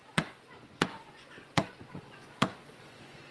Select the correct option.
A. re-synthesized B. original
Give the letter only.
A